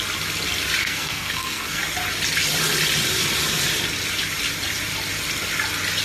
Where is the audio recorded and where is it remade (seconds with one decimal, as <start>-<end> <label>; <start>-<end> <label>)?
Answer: 0.0-0.8 recorded; 0.8-1.8 remade; 1.8-6.0 recorded